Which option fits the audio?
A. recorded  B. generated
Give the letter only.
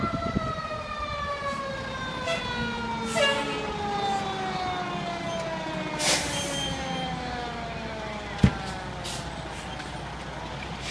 A